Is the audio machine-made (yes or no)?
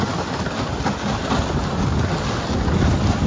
no